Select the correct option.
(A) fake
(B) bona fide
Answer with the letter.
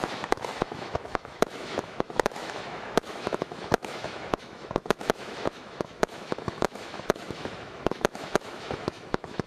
A